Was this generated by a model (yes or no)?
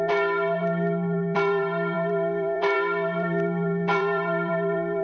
yes